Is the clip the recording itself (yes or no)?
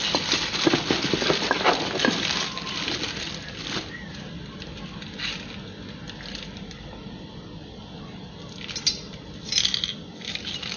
yes